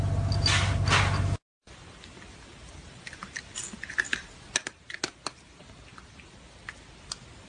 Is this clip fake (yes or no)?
no